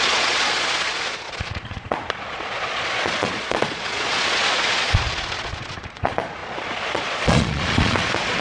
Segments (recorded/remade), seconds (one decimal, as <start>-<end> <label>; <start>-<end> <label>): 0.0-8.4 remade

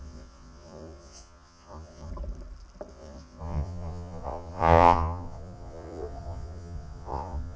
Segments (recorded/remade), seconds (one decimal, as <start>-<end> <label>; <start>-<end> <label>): 0.0-2.1 remade; 2.1-2.9 recorded; 2.9-7.6 remade

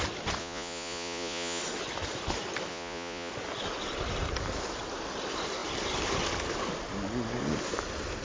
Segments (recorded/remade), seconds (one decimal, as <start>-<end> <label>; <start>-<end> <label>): 0.0-0.4 recorded; 0.4-1.6 remade; 1.6-2.7 recorded; 2.7-3.3 remade; 3.3-8.2 recorded

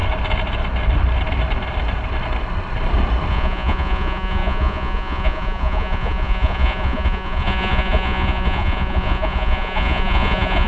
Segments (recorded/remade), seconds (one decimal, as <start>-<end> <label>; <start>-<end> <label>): 0.0-3.3 recorded; 3.3-10.7 remade